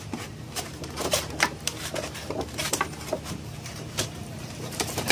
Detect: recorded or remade remade